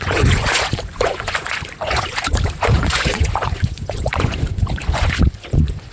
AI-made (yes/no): yes